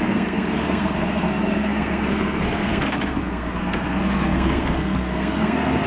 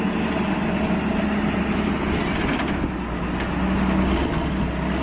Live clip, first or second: second